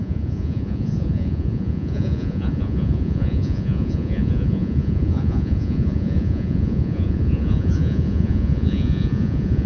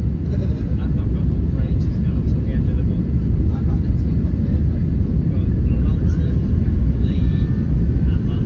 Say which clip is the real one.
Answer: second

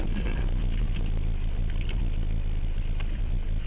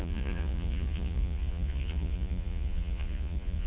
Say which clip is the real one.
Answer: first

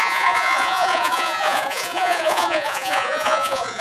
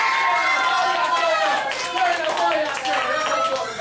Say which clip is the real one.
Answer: second